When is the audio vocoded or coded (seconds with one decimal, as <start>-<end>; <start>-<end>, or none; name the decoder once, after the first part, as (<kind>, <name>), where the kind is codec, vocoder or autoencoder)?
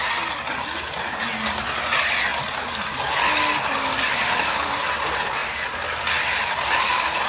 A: none